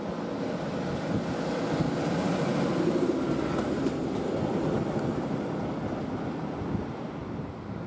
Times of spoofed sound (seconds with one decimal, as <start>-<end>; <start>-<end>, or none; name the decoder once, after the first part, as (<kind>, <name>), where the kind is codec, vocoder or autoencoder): none